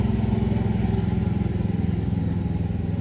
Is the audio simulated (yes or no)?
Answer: no